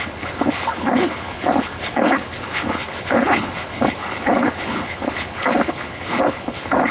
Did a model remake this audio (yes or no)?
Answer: yes